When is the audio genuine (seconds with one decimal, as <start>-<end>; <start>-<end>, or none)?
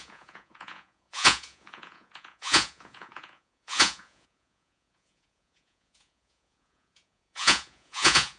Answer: none